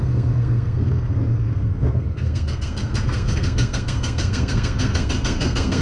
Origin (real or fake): fake